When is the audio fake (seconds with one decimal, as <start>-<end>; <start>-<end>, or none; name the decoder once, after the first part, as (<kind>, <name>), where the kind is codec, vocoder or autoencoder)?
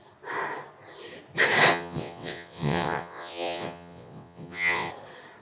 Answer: 1.7-4.9 (vocoder, WaveNeXt)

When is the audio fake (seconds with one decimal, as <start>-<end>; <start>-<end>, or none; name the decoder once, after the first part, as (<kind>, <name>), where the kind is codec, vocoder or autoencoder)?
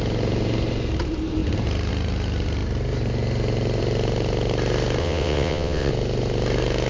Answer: 5.0-5.9 (vocoder, WaveNeXt)